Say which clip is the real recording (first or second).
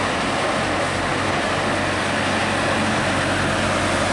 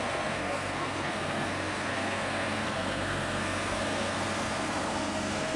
first